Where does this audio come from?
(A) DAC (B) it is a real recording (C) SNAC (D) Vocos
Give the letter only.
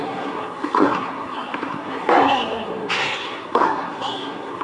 C